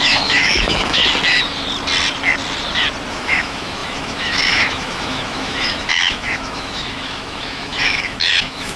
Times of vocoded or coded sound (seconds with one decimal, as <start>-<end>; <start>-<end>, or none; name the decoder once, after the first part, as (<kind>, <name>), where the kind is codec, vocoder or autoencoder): 0.0-1.0 (autoencoder, DAC-VAE); 3.1-8.8